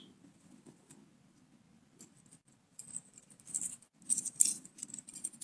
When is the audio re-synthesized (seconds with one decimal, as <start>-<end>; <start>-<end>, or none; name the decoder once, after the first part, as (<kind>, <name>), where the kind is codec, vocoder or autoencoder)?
none